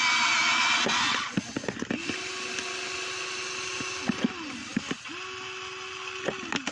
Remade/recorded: recorded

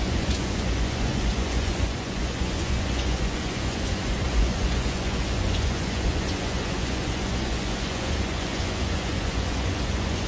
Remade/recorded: remade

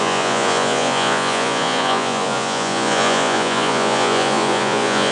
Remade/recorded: remade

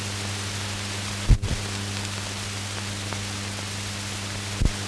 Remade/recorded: recorded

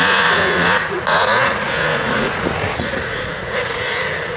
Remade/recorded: remade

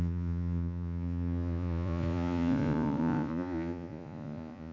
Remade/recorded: remade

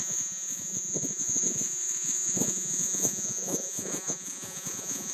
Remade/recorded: remade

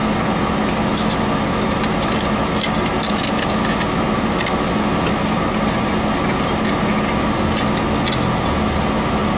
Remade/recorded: recorded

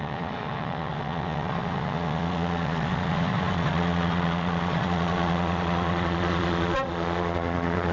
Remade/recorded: remade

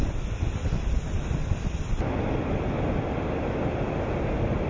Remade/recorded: recorded